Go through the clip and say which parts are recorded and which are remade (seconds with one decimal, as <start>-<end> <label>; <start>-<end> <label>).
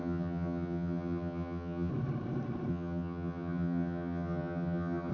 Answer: 0.0-1.9 remade; 1.9-2.7 recorded; 2.7-5.1 remade